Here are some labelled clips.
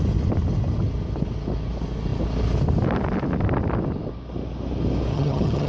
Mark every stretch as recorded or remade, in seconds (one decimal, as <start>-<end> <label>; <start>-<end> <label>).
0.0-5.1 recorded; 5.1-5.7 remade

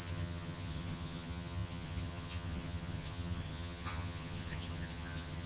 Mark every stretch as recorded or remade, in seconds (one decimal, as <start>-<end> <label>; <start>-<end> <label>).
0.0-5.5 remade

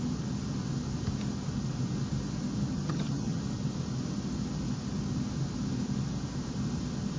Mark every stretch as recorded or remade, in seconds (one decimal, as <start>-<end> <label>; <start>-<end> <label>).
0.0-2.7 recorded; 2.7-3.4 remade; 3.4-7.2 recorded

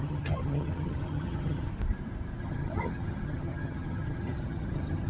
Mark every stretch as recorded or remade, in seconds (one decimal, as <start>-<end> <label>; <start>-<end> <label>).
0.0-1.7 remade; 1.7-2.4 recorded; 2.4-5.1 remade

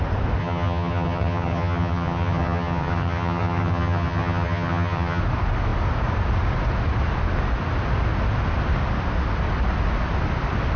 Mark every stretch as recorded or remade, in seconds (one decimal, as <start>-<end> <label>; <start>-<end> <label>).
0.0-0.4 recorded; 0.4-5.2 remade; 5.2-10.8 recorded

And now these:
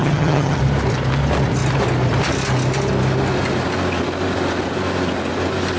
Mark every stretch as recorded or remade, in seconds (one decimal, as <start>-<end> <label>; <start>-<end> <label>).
0.0-0.6 remade; 0.6-5.8 recorded

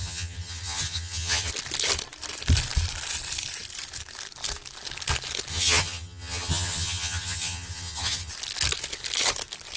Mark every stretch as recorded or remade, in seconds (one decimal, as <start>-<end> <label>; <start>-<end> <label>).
0.0-1.5 remade; 1.5-5.5 recorded; 5.5-8.3 remade; 8.3-9.8 recorded

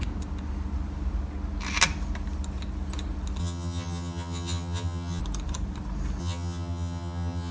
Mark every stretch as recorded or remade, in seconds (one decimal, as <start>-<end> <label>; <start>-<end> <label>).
0.0-3.4 recorded; 3.4-5.2 remade; 5.2-6.2 recorded; 6.2-7.5 remade